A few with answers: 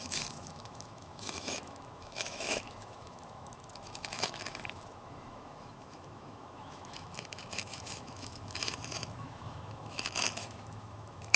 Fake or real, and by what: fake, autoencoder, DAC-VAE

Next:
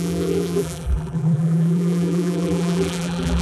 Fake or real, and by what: fake, vocoder, BigVGAN v2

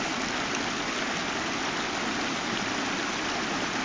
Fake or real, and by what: real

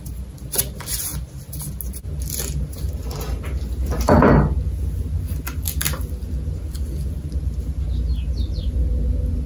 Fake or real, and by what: real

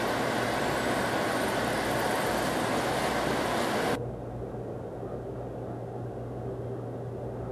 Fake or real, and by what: real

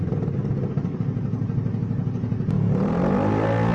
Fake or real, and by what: real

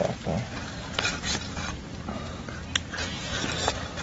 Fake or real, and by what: real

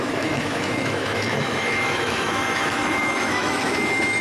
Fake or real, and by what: fake, autoencoder, DAC-VAE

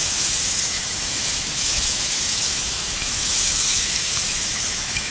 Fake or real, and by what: fake, autoencoder, DAC-VAE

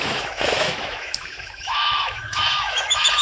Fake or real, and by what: fake, autoencoder, DAC-VAE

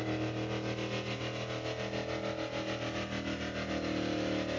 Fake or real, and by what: real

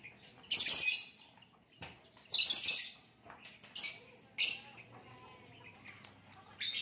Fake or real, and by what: real